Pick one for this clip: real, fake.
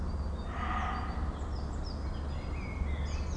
real